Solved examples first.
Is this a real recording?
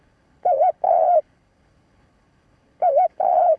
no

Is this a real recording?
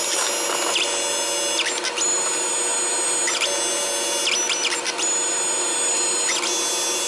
yes